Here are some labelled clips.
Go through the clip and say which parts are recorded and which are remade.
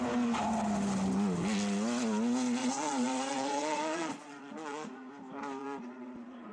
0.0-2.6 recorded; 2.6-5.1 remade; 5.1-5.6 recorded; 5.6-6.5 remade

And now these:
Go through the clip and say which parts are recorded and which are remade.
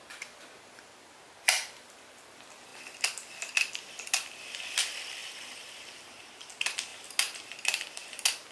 0.0-5.2 recorded; 5.2-5.8 remade; 5.8-8.5 recorded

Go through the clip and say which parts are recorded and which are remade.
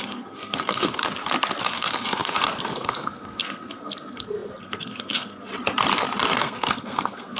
0.0-1.0 remade; 1.0-1.6 recorded; 1.6-5.5 remade; 5.5-6.4 recorded; 6.4-7.4 remade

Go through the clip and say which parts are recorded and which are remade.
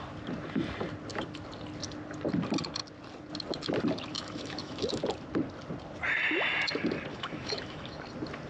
0.0-4.1 recorded; 4.1-5.0 remade; 5.0-7.1 recorded; 7.1-8.0 remade; 8.0-8.5 recorded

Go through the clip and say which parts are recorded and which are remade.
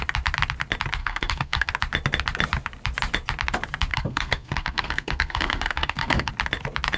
0.0-1.0 recorded; 1.0-1.7 remade; 1.7-3.9 recorded; 3.9-6.3 remade; 6.3-7.0 recorded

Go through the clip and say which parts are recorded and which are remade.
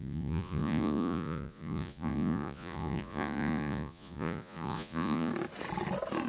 0.0-5.3 remade; 5.3-6.3 recorded